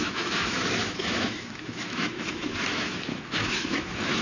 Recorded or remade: remade